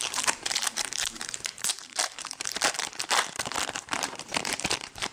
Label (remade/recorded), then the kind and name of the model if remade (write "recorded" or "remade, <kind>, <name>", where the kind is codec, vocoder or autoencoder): remade, vocoder, BigVGAN v2